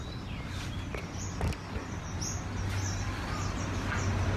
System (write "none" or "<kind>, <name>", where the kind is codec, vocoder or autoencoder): none